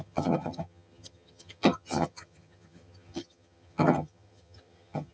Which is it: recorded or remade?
remade